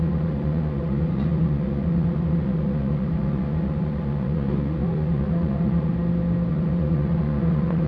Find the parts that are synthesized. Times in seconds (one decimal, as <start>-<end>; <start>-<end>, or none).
0.0-5.9; 6.5-7.9